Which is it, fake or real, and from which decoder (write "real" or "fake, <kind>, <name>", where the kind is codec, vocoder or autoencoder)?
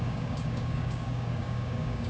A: fake, codec, DAC